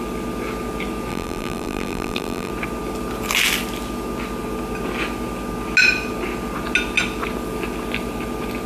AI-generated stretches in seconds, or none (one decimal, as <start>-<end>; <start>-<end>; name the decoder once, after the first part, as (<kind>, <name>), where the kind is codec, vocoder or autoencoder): 1.1-2.5 (vocoder, BigVGAN v2)